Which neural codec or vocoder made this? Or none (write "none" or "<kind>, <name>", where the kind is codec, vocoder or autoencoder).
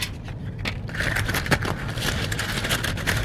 none